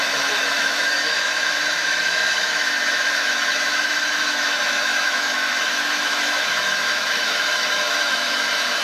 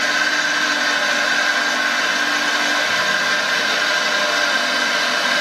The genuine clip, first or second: second